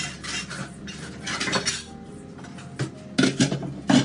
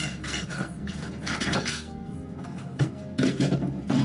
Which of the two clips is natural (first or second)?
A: first